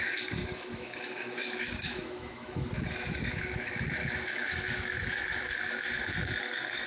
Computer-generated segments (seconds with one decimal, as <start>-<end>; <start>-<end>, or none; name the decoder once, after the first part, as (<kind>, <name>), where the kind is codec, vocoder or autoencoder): 0.0-6.9 (autoencoder, DAC-VAE)